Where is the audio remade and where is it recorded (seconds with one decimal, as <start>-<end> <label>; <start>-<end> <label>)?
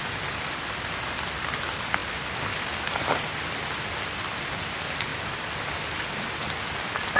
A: 0.0-7.2 recorded